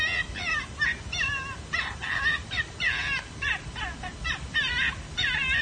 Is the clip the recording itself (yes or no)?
yes